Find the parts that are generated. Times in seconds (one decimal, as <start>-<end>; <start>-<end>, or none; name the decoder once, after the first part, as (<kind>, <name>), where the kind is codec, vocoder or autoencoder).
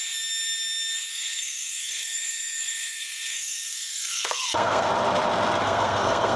1.1-4.9 (codec, SNAC); 5.6-6.4